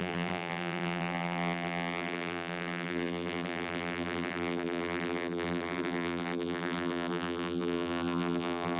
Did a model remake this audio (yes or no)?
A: yes